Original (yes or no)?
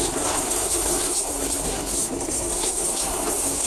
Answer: no